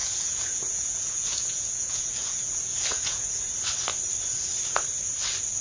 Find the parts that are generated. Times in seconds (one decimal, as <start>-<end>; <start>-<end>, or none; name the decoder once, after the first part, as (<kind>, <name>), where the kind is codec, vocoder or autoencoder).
0.0-3.4 (vocoder, Vocos)